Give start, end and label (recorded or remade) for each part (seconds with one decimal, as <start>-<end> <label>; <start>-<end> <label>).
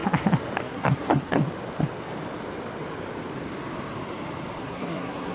0.0-0.6 recorded; 0.6-1.4 remade; 1.4-4.6 recorded; 4.6-5.3 remade